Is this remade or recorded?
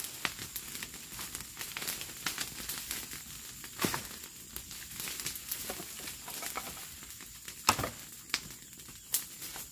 recorded